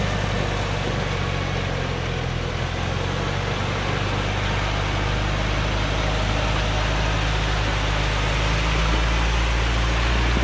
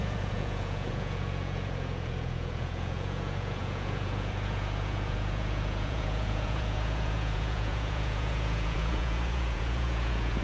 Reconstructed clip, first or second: second